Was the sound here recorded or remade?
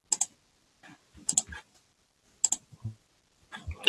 recorded